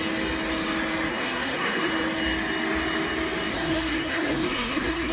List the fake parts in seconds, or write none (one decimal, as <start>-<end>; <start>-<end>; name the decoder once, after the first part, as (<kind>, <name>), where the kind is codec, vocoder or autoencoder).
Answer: 1.1-1.9 (codec, SNAC); 3.5-5.1